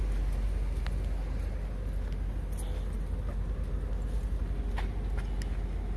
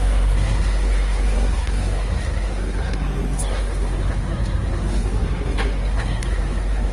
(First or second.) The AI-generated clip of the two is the second